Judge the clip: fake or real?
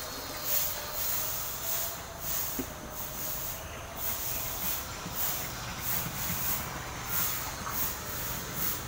real